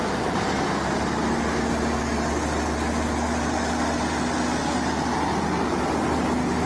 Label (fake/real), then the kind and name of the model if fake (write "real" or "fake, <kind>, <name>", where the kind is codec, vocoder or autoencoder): real